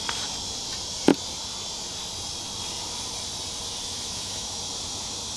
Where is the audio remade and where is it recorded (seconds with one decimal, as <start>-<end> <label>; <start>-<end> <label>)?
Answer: 0.0-3.8 recorded; 3.8-4.6 remade; 4.6-5.4 recorded